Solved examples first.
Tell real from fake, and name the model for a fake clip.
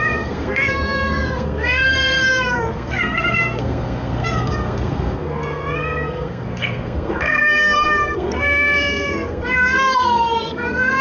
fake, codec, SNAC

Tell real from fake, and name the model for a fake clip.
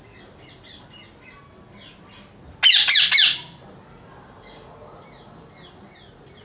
real